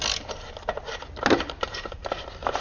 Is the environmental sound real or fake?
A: real